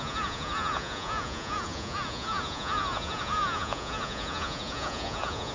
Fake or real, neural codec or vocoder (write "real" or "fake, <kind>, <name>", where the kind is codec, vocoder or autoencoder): fake, vocoder, Vocos